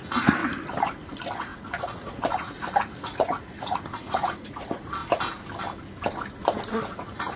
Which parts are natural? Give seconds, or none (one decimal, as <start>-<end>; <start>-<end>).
0.4-1.1; 5.0-6.7